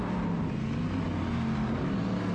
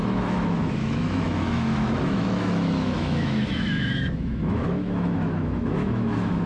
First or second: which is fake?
second